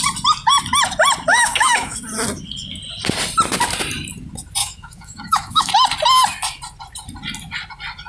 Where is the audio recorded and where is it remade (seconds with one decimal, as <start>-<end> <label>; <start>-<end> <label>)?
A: 0.0-1.3 recorded; 1.3-2.0 remade; 2.0-4.6 recorded; 4.6-5.7 remade; 5.7-8.1 recorded

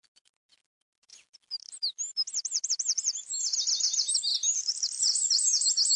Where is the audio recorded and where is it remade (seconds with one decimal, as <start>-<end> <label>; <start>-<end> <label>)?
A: 0.0-6.0 remade

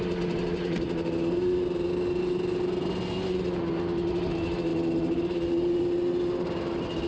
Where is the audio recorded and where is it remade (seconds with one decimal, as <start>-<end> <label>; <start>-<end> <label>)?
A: 0.0-7.1 recorded

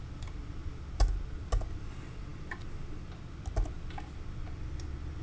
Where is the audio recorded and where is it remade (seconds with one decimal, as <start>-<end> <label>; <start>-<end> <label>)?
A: 0.0-5.2 recorded

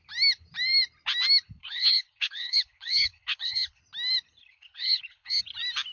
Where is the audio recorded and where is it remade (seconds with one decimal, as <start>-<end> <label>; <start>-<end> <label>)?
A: 0.0-1.6 recorded; 1.6-3.8 remade; 3.8-4.4 recorded; 4.4-5.4 remade; 5.4-5.9 recorded

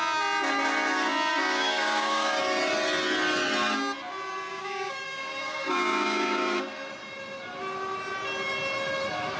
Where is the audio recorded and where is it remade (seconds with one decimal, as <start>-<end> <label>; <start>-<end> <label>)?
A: 0.0-1.3 recorded; 1.3-2.4 remade; 2.4-4.5 recorded; 4.5-6.6 remade; 6.6-9.4 recorded

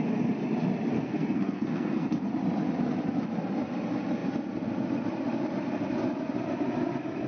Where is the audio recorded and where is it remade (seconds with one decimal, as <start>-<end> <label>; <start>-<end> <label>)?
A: 0.0-0.9 recorded; 0.9-2.3 remade; 2.3-7.3 recorded

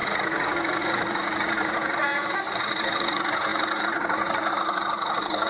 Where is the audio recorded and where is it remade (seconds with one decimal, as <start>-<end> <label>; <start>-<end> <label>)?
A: 0.0-5.5 remade